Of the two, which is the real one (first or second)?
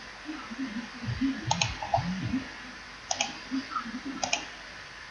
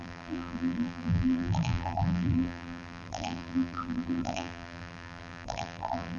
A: first